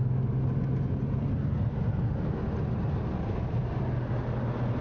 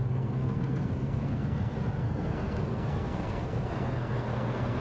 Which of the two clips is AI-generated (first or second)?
second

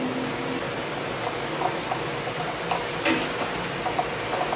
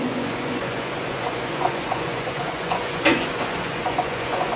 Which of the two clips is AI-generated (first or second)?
second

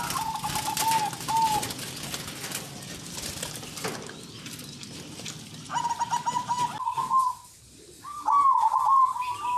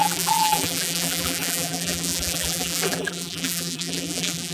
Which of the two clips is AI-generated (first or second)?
second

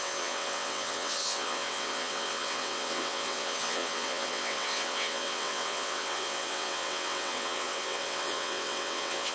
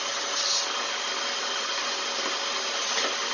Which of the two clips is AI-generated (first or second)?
first